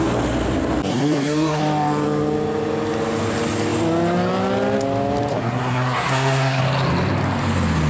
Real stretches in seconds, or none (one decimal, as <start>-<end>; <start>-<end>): 0.0-0.9; 1.6-5.3; 6.6-7.9